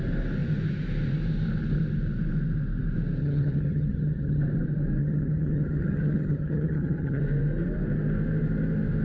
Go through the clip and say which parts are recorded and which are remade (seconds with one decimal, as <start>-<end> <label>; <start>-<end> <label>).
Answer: 0.0-3.2 recorded; 3.2-4.4 remade; 4.4-5.0 recorded; 5.0-7.2 remade; 7.2-9.0 recorded